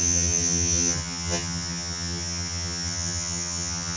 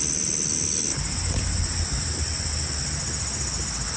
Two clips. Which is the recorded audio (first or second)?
second